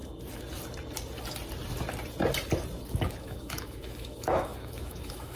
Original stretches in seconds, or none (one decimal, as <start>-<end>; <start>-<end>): 0.0-3.2